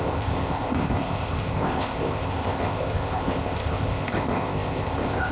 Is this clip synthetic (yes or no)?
yes